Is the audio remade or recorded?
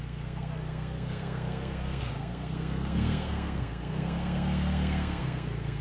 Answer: remade